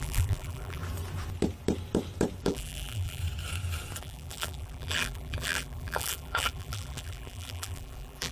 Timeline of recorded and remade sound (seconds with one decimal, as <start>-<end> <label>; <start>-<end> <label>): 0.0-0.8 remade; 0.8-2.4 recorded; 2.4-3.2 remade; 3.2-4.0 recorded; 4.0-8.3 remade